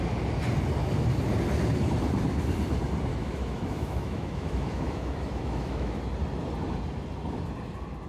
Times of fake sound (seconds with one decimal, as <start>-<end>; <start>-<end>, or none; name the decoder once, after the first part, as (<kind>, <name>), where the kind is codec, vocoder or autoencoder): 3.1-6.0 (autoencoder, DAC-VAE)